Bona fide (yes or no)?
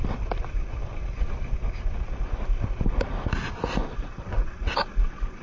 yes